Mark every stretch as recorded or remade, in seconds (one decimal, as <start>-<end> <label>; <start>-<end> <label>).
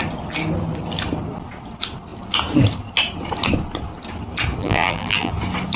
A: 0.0-4.6 recorded; 4.6-5.3 remade; 5.3-5.8 recorded